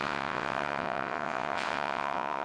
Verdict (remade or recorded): remade